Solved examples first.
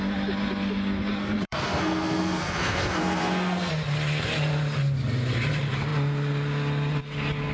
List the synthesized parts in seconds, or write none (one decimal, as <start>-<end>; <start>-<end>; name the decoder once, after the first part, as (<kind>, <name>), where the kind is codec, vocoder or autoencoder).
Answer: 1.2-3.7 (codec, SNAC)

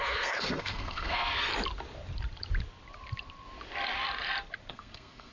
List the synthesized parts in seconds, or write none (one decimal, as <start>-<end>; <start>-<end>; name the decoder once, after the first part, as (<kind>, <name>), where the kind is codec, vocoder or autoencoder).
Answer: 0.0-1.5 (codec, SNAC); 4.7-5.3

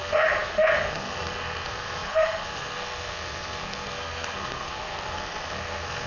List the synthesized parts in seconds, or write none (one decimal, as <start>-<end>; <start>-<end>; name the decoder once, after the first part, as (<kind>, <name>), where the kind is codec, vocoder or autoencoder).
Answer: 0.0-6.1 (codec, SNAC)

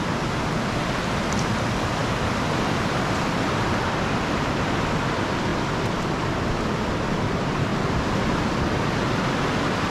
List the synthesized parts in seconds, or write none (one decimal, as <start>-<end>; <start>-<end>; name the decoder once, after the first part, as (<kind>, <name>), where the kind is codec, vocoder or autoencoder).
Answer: none